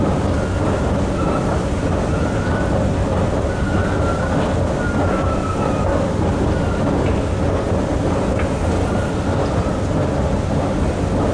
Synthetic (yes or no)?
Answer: no